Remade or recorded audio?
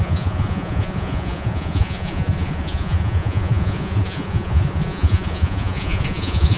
remade